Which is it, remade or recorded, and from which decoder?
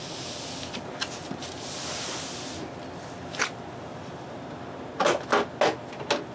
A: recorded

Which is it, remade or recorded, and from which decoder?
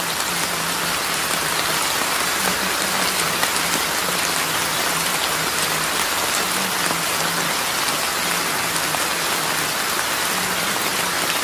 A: recorded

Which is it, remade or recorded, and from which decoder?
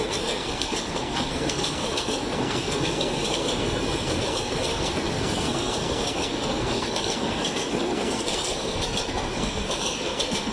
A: remade, codec, SNAC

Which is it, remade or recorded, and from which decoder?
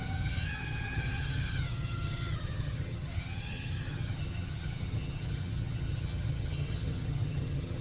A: remade, vocoder, HiFi-GAN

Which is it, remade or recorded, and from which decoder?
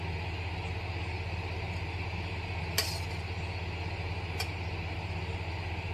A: recorded